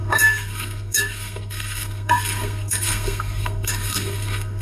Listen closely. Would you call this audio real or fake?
fake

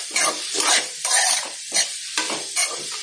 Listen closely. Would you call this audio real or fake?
fake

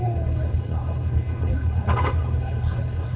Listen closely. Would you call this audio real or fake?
fake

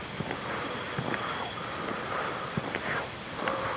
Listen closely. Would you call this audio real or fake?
real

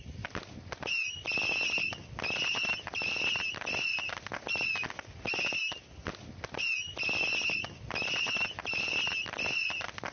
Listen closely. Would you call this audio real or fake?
real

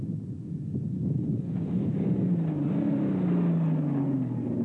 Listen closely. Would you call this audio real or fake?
real